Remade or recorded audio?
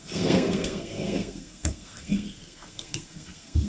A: remade